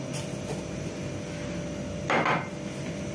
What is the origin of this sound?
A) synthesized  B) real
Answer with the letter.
B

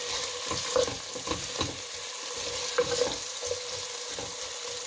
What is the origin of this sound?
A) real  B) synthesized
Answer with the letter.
A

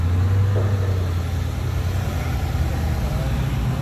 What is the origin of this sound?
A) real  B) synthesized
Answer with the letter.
A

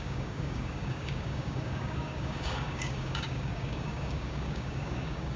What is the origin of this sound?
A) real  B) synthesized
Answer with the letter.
B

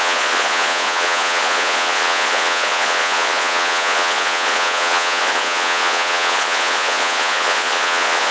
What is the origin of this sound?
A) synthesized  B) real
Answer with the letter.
A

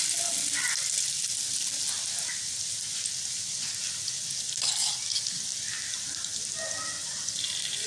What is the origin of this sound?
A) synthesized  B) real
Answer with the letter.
B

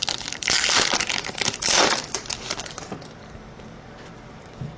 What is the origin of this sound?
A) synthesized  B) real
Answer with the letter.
A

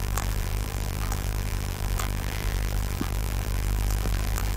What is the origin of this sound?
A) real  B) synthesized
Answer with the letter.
B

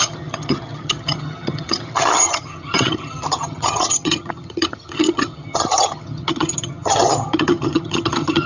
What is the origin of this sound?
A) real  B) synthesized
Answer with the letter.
B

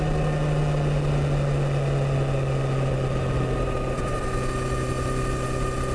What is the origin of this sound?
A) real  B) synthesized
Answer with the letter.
A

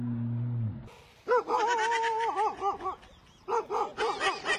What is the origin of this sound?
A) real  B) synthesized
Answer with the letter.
A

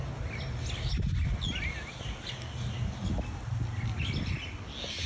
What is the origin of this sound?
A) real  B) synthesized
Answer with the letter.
A